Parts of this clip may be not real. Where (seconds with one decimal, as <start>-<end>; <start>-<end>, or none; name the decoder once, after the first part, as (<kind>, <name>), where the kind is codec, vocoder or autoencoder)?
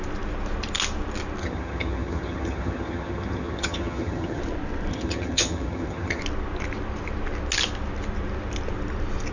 1.4-4.4 (vocoder, HiFi-GAN); 4.9-6.2